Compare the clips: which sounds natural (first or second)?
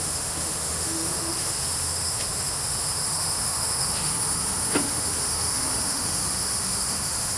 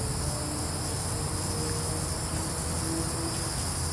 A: second